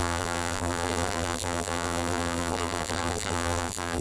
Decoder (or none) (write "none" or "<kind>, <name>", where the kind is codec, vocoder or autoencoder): vocoder, BigVGAN v2